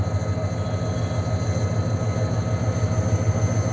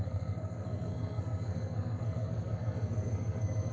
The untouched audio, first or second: first